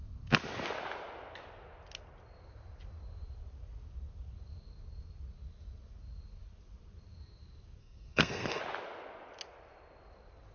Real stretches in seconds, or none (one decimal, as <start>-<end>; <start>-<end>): 0.0-7.8; 8.6-10.5